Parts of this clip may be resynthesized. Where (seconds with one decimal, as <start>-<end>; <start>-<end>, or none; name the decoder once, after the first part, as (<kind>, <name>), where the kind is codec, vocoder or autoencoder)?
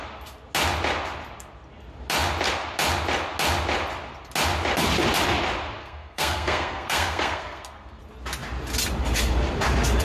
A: 5.8-8.0 (codec, SNAC)